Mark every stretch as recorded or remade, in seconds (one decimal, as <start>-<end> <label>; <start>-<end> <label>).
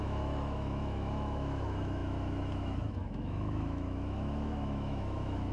0.0-5.5 remade